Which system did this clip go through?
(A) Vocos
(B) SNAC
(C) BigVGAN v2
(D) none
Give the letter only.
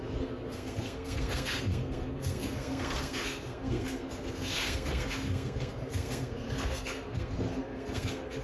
B